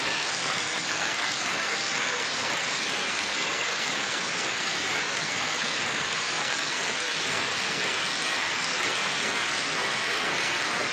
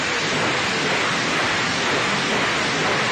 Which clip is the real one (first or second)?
second